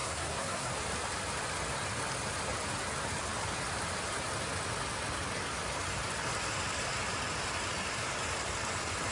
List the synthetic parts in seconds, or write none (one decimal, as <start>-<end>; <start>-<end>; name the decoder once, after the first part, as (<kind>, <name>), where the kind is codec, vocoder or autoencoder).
0.0-0.7 (codec, SNAC)